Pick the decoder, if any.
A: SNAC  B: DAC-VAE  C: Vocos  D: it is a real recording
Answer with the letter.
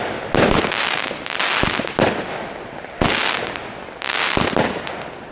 D